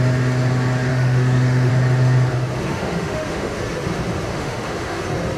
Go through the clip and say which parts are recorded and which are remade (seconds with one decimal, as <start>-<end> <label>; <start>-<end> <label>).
0.0-0.9 recorded; 0.9-1.7 remade; 1.7-2.7 recorded; 2.7-3.6 remade; 3.6-4.3 recorded; 4.3-5.0 remade; 5.0-5.4 recorded